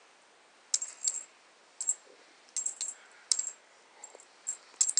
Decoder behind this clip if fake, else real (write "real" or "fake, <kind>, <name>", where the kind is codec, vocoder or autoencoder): real